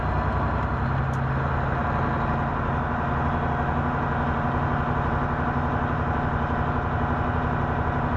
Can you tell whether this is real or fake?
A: real